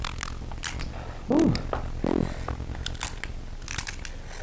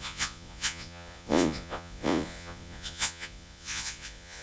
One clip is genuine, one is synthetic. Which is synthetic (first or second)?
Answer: second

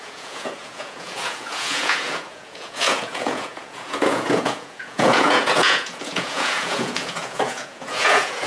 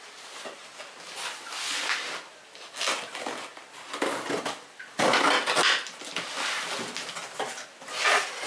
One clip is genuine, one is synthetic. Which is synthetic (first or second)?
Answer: first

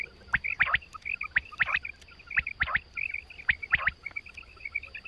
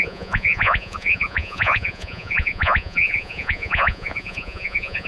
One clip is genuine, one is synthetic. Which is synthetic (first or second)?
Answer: second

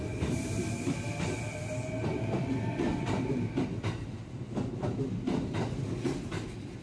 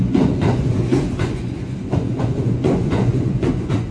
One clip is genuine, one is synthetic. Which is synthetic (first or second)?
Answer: second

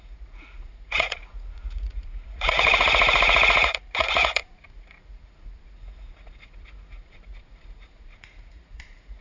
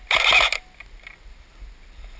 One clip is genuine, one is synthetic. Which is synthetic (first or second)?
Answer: first